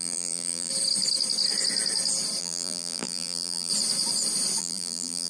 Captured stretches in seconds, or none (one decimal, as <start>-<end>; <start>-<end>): 0.7-2.4; 3.7-4.6